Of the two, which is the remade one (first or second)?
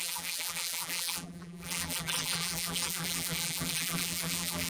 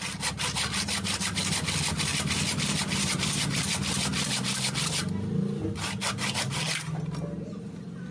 first